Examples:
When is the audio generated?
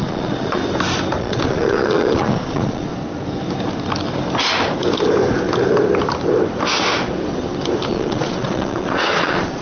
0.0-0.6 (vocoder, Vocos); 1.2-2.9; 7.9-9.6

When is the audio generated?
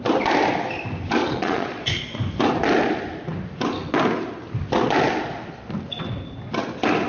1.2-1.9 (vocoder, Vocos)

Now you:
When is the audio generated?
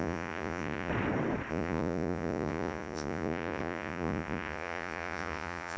0.0-0.9 (vocoder, Vocos); 1.5-5.8